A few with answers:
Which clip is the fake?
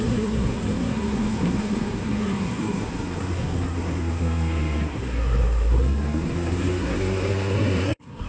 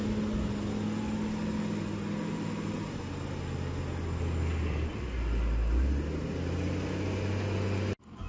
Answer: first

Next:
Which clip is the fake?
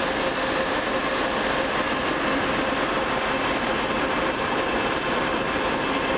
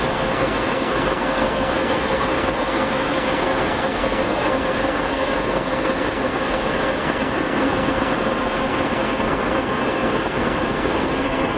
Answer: second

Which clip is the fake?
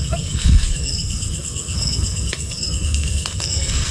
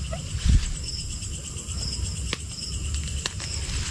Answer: first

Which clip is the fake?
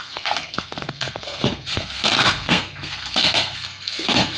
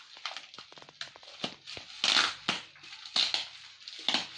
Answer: first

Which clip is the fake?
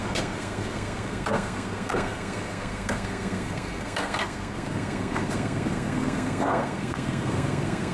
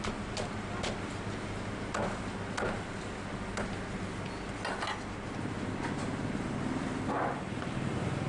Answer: first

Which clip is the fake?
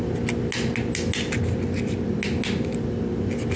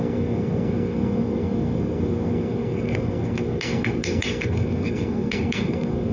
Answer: second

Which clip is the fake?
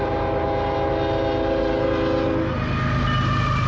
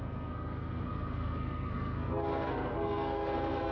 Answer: second